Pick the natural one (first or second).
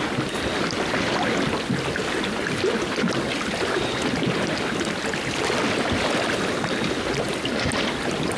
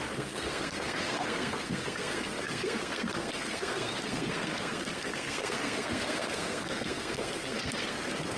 first